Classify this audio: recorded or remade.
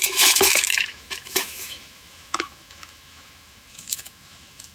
remade